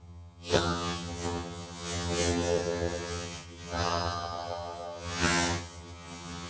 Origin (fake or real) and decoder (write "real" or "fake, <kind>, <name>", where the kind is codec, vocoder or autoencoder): fake, vocoder, HiFi-GAN